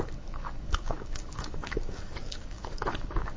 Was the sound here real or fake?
fake